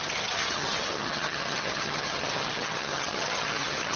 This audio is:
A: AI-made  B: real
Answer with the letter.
A